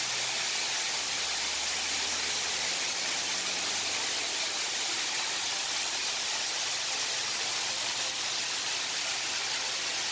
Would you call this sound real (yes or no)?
yes